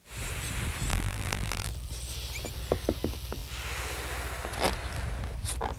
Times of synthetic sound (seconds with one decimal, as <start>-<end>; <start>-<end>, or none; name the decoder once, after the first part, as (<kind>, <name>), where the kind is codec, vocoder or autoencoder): 0.9-1.7 (vocoder, BigVGAN v2)